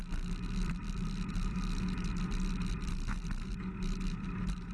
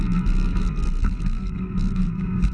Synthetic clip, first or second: second